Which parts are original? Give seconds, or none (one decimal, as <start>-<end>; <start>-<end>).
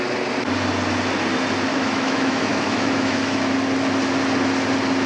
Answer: 0.0-1.7; 3.5-5.1